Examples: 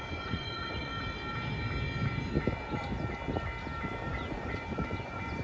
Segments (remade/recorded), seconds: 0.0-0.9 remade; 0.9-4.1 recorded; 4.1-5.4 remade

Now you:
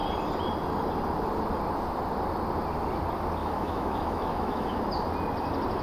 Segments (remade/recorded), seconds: 0.0-3.4 recorded; 3.4-4.8 remade; 4.8-5.8 recorded

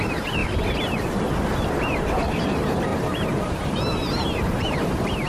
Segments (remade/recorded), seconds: 0.0-0.4 remade; 0.4-2.4 recorded; 2.4-5.3 remade

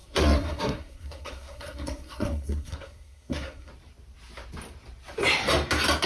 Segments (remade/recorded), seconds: 0.0-3.7 remade; 3.7-6.1 recorded